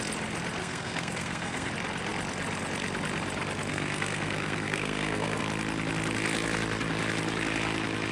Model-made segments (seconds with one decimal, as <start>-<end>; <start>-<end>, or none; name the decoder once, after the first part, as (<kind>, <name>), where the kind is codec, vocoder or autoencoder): 0.6-1.7 (codec, SNAC); 3.7-5.4